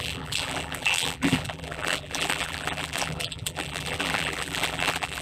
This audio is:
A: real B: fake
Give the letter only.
B